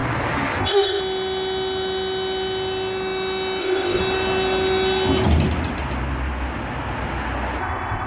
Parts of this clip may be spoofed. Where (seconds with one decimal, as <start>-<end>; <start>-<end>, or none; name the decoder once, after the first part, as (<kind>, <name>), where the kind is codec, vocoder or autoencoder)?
0.6-1.0 (codec, ZipCodec); 3.6-4.0; 7.6-8.1